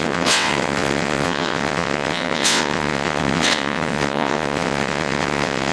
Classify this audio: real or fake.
fake